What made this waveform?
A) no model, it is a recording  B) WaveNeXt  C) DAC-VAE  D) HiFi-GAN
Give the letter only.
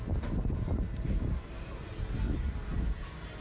A